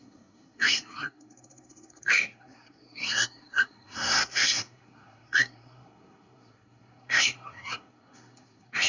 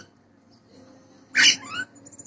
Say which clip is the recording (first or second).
second